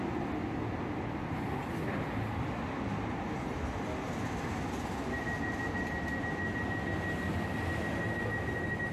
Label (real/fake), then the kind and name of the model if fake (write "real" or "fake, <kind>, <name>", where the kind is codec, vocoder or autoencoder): real